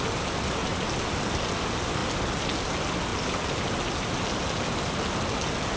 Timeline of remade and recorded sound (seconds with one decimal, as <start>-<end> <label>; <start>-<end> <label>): 0.0-5.8 recorded